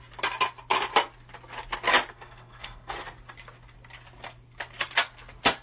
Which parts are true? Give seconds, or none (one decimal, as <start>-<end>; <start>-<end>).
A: 0.0-2.1; 2.9-5.6